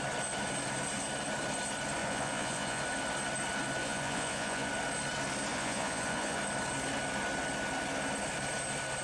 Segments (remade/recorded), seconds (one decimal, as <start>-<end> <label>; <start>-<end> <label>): 0.0-2.0 recorded; 2.0-2.8 remade; 2.8-3.8 recorded; 3.8-4.7 remade; 4.7-5.5 recorded; 5.5-6.4 remade; 6.4-9.0 recorded